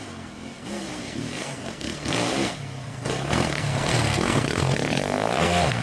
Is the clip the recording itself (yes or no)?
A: no